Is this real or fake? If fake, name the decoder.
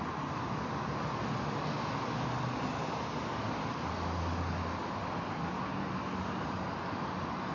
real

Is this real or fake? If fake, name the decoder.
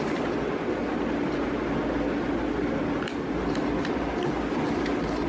real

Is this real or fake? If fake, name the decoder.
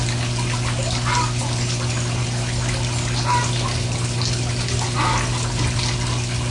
real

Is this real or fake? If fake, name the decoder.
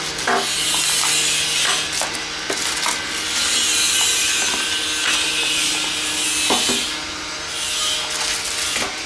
real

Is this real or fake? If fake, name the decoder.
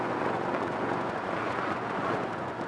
fake, vocoder, Vocos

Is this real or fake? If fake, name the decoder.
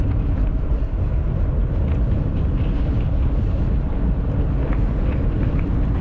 real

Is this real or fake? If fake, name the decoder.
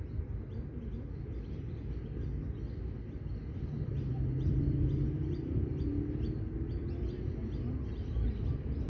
real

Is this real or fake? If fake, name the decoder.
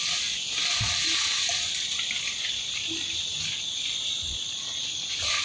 real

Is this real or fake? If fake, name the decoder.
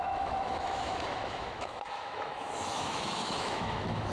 fake, autoencoder, DAC-VAE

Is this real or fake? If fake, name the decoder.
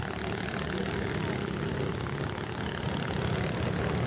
real